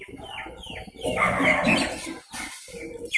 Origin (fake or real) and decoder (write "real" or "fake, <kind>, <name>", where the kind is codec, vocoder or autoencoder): real